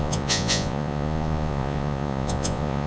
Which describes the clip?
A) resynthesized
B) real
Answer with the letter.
A